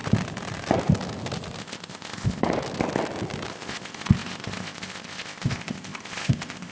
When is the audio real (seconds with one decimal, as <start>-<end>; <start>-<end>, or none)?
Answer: 0.0-1.6; 2.4-3.5